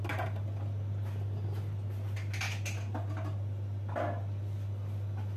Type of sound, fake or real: real